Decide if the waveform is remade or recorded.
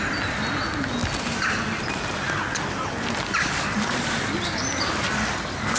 recorded